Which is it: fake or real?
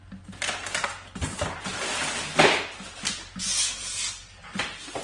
real